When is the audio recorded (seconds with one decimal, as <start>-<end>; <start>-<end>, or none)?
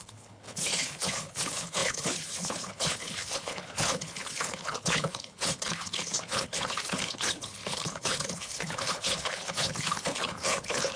none